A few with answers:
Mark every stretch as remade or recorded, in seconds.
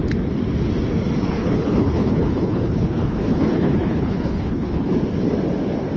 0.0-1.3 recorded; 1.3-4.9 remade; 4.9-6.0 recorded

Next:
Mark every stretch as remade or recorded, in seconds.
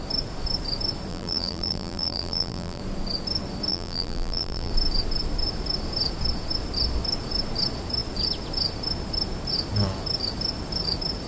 0.0-1.1 recorded; 1.1-2.8 remade; 2.8-3.7 recorded; 3.7-4.7 remade; 4.7-11.3 recorded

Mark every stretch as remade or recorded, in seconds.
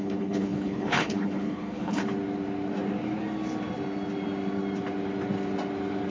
0.0-2.0 remade; 2.0-6.1 recorded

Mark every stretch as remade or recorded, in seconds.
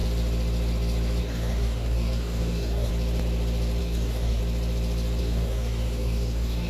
0.0-1.2 recorded; 1.2-2.9 remade; 2.9-3.8 recorded; 3.8-4.4 remade; 4.4-5.2 recorded; 5.2-6.7 remade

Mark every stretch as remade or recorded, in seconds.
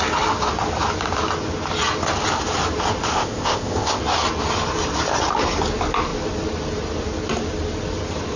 0.0-3.1 recorded; 3.1-4.0 remade; 4.0-8.4 recorded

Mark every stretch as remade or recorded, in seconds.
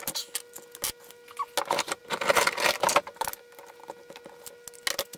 0.0-5.2 recorded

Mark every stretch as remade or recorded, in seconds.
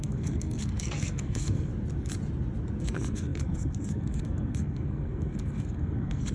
0.0-1.7 remade; 1.7-2.8 recorded; 2.8-6.3 remade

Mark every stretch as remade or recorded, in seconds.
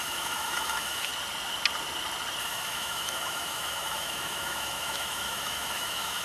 0.0-1.1 remade; 1.1-2.4 recorded; 2.4-6.2 remade